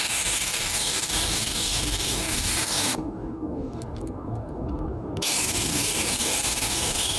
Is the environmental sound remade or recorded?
remade